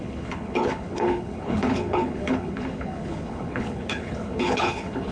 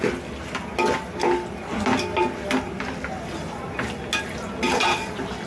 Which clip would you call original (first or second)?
second